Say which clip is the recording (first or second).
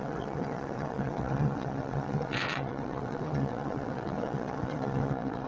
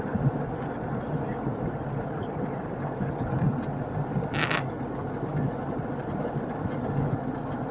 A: second